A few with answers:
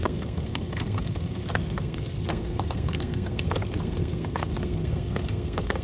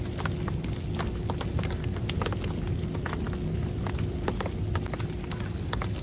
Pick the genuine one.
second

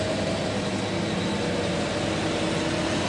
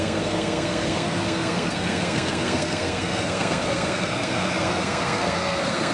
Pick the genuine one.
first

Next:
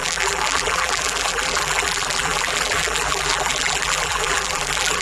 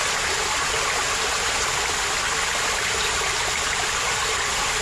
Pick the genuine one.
second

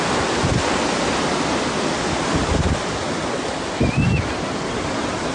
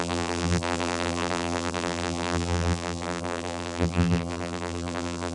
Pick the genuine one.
first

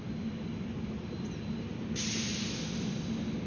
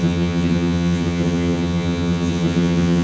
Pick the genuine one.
first